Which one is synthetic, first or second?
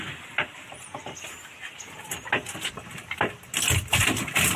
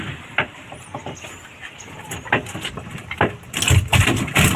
second